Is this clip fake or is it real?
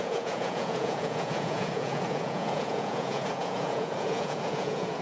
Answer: fake